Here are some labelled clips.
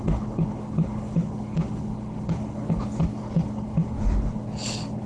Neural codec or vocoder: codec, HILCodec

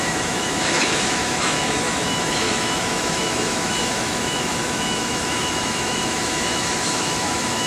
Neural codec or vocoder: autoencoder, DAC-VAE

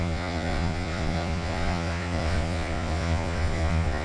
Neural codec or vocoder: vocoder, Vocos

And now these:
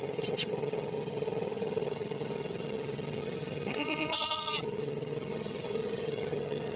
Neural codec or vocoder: vocoder, HiFi-GAN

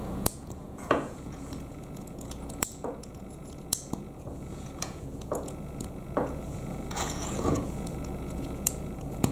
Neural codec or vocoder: vocoder, Vocos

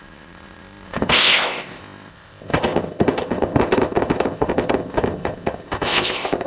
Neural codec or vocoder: codec, ZipCodec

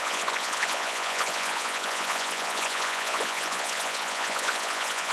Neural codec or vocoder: vocoder, Vocos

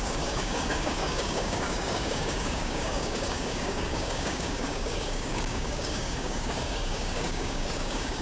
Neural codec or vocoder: codec, DAC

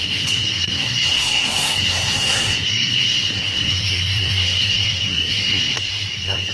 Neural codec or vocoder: codec, SNAC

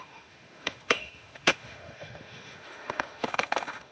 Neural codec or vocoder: autoencoder, DAC-VAE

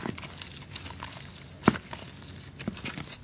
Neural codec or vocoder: none